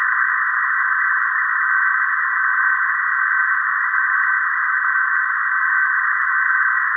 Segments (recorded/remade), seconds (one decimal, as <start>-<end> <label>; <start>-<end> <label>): 0.0-7.0 recorded